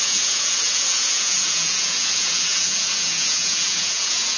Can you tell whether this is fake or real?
fake